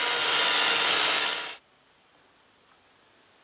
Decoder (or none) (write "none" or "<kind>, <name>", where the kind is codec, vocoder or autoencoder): none